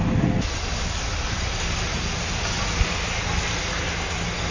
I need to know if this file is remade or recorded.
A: recorded